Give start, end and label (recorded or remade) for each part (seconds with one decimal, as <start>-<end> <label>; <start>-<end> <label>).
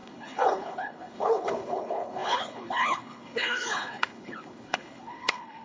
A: 0.0-5.6 remade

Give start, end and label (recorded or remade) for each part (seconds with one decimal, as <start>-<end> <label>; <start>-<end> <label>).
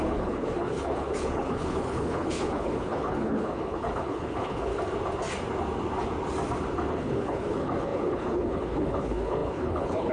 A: 0.0-4.7 remade; 4.7-6.9 recorded; 6.9-10.1 remade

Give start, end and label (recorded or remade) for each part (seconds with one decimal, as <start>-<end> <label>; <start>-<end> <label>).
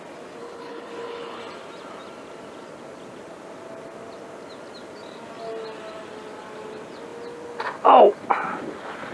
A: 0.0-0.4 recorded; 0.4-1.4 remade; 1.4-9.1 recorded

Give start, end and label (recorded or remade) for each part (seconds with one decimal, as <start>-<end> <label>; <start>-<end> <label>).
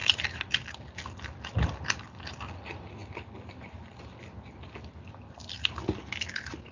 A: 0.0-6.7 recorded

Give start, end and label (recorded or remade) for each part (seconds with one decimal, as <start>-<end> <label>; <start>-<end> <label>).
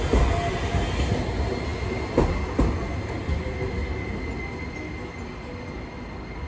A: 0.0-6.5 recorded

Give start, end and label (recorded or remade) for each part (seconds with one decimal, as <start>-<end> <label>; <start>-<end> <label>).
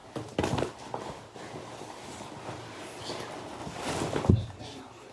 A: 0.0-5.1 recorded